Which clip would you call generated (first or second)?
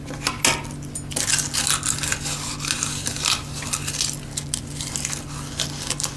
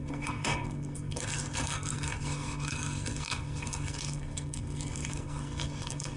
second